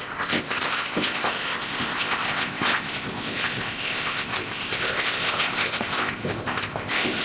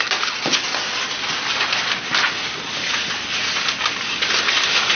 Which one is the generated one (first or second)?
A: first